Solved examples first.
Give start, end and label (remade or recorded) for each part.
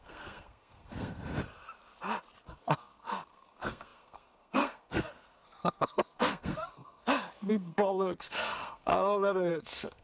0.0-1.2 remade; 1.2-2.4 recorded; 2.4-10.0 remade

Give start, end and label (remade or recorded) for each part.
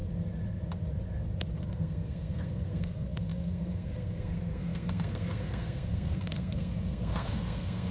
0.0-1.6 recorded; 1.6-7.9 remade